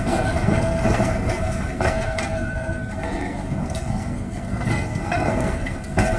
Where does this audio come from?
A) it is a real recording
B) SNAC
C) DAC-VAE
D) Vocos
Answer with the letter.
B